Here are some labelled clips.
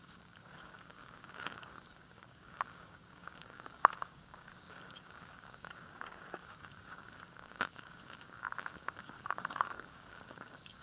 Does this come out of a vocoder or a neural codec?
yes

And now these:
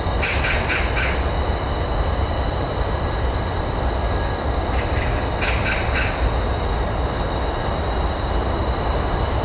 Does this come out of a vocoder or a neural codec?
no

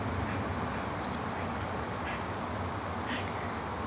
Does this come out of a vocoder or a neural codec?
no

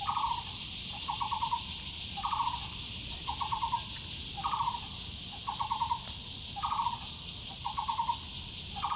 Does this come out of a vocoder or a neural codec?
no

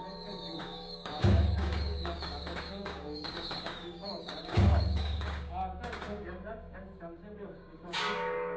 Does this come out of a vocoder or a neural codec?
yes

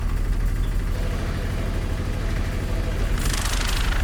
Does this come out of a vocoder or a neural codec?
no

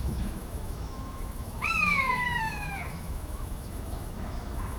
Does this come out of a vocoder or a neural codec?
yes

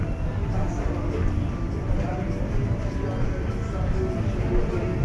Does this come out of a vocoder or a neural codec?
no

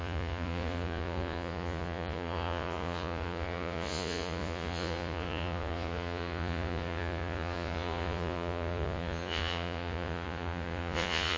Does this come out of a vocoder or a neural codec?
yes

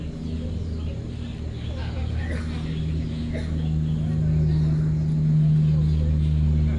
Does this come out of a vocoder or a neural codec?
no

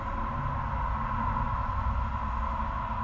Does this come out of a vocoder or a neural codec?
no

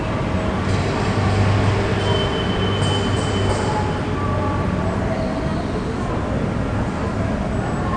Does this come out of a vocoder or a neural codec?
no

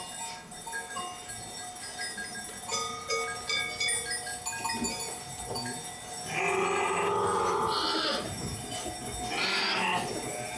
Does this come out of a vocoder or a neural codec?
no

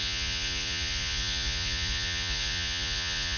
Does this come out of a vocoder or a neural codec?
yes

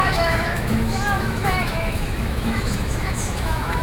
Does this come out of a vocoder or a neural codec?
yes